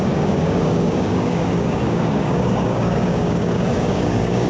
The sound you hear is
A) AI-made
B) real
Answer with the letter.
A